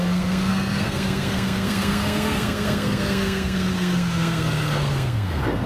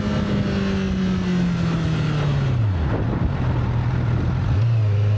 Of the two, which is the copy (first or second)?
first